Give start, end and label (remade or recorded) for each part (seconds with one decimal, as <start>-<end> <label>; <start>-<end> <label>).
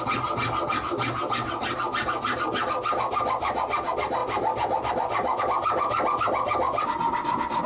0.0-7.7 recorded